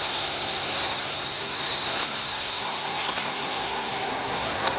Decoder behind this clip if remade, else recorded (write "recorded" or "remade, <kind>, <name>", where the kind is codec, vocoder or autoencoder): remade, codec, SNAC